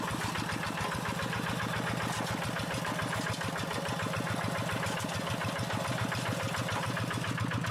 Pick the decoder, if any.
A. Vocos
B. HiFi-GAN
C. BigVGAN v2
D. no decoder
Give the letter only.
D